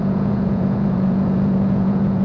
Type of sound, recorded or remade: remade